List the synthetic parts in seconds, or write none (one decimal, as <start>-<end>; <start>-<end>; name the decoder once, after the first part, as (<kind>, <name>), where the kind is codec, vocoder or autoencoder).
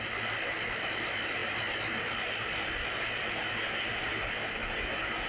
none